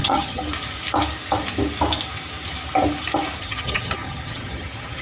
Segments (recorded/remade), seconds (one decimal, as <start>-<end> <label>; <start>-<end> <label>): 0.0-0.4 remade; 0.4-3.4 recorded; 3.4-5.0 remade